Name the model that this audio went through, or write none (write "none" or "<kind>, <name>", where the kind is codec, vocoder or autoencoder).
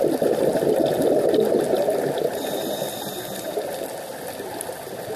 none